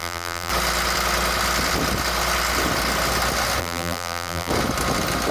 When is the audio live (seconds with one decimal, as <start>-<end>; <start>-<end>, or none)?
0.5-3.6; 4.5-5.3